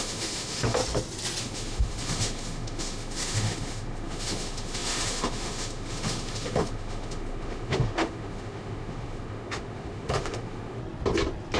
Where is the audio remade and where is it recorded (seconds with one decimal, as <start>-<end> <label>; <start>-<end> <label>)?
0.0-0.8 remade; 0.8-1.4 recorded; 1.4-10.8 remade; 10.8-11.6 recorded